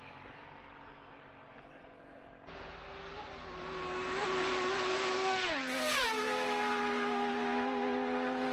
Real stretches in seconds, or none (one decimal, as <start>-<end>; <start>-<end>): 0.0-8.5